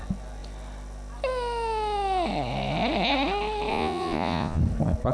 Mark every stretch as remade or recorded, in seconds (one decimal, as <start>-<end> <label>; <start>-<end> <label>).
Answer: 0.0-3.7 recorded; 3.7-4.6 remade; 4.6-5.1 recorded